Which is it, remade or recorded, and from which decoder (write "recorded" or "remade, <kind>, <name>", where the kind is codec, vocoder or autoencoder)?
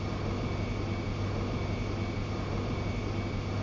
recorded